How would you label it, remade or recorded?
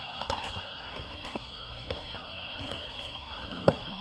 remade